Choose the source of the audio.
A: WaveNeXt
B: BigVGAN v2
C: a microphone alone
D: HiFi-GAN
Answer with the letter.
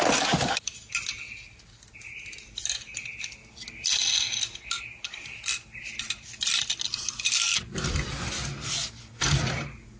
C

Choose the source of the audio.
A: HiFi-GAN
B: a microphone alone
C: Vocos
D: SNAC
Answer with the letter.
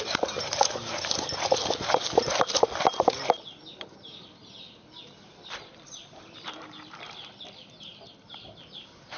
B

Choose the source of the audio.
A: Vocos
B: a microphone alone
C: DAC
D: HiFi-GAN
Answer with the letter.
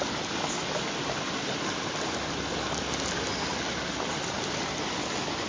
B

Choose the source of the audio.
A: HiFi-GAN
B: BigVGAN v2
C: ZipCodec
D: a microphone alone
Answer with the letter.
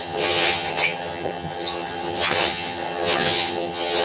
A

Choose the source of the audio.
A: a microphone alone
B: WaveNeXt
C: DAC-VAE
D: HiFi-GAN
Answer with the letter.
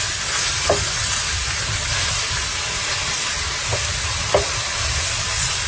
A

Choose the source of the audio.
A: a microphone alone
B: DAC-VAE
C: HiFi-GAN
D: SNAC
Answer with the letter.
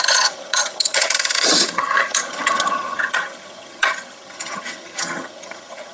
C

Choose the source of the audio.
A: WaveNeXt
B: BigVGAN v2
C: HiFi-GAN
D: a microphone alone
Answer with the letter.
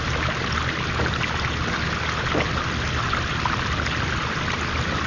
D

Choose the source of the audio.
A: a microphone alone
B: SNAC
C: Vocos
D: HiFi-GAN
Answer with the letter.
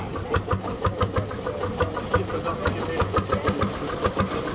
A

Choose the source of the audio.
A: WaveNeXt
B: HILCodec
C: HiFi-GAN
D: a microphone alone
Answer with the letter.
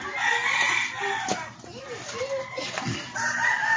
D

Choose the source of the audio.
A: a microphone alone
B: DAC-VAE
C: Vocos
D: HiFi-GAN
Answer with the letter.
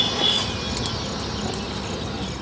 A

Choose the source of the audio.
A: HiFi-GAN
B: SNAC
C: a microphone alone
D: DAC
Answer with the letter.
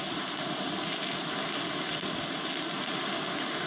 C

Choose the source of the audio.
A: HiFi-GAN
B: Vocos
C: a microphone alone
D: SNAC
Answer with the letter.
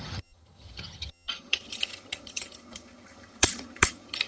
A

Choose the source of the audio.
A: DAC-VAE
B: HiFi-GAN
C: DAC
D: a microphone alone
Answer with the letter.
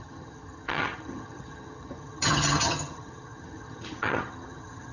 B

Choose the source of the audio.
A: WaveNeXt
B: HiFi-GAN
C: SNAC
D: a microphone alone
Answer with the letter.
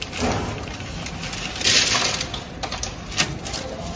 D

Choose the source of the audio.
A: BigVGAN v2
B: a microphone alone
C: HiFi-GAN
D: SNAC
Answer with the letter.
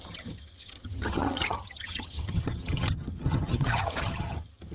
C